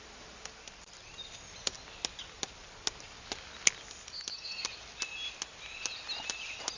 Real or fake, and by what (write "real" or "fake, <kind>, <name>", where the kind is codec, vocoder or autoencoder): real